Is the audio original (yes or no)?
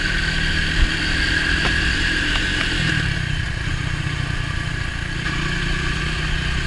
no